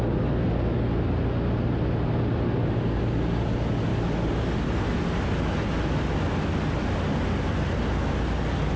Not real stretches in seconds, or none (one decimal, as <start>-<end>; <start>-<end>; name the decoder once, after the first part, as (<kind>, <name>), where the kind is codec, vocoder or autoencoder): none